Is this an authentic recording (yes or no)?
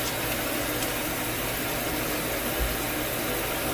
yes